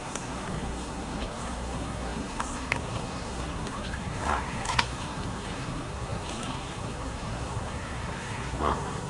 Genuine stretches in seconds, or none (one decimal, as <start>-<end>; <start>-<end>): none